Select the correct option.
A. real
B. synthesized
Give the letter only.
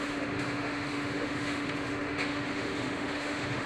B